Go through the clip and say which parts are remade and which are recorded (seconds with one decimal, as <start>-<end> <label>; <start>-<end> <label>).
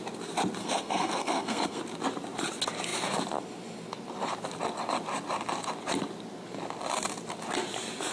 0.0-0.6 recorded; 0.6-1.8 remade; 1.8-8.1 recorded